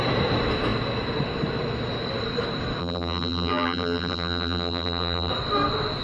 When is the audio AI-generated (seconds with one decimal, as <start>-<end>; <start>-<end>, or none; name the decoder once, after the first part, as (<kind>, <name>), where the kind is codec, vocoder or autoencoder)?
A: 2.8-5.3 (vocoder, BigVGAN v2)